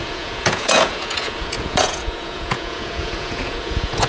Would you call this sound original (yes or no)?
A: no